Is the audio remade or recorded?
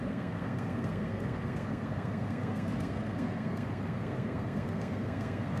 remade